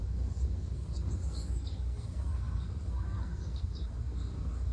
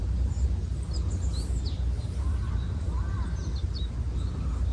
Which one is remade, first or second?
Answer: first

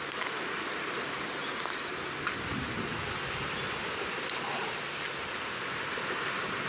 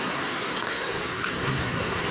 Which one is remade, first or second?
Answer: second